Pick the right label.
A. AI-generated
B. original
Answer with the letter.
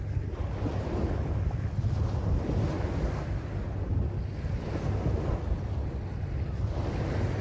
B